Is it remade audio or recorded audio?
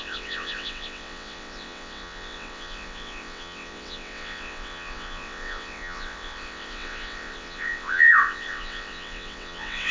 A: remade